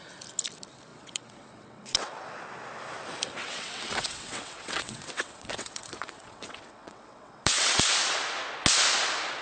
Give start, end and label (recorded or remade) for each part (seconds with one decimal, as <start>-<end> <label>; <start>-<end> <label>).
0.0-0.9 recorded; 0.9-2.2 remade; 2.2-3.4 recorded; 3.4-7.8 remade; 7.8-9.4 recorded